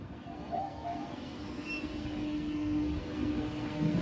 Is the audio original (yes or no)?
no